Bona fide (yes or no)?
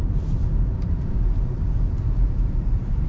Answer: no